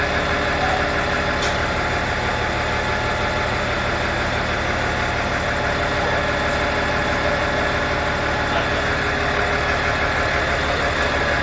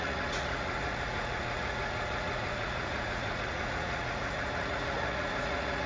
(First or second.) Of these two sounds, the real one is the first